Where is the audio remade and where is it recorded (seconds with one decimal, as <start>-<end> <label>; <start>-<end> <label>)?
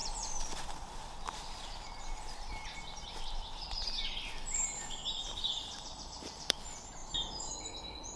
0.0-3.8 remade; 3.8-5.0 recorded; 5.0-6.6 remade; 6.6-7.0 recorded; 7.0-7.5 remade; 7.5-8.2 recorded